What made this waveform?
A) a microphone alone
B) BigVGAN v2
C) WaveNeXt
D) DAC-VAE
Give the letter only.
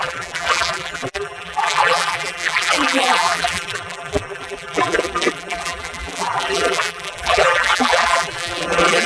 B